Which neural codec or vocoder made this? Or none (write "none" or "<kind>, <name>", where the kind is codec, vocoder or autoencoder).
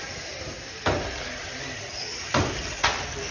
none